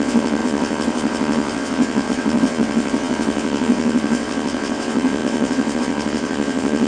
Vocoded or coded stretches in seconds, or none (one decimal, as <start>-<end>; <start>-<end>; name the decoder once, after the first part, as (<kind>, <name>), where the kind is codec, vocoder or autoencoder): 0.0-6.9 (vocoder, WaveNeXt)